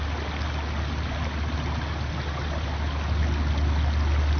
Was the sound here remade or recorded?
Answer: recorded